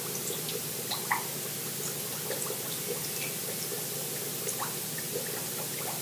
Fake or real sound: real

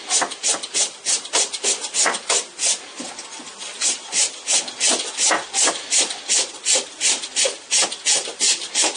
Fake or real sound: real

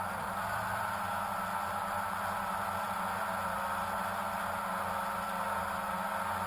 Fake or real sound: real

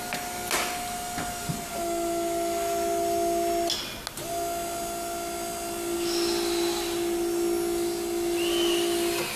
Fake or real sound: real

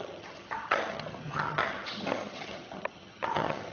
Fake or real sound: fake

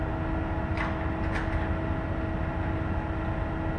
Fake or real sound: real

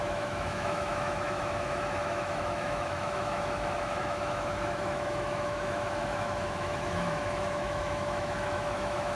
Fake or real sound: fake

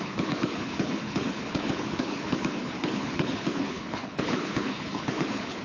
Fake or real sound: fake